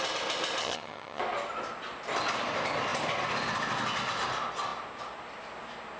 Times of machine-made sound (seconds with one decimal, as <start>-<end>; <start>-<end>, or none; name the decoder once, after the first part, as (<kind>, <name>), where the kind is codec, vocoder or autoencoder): 0.6-1.2 (vocoder, HiFi-GAN)